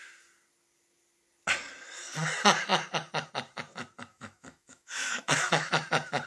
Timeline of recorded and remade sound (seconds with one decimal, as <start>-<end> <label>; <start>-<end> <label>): 0.0-4.1 recorded; 4.1-5.7 remade; 5.7-6.3 recorded